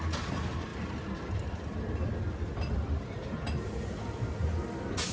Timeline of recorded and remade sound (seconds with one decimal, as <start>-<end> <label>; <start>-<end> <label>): 0.0-5.1 recorded